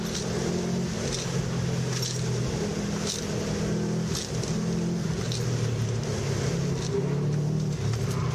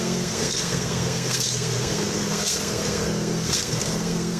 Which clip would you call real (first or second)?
first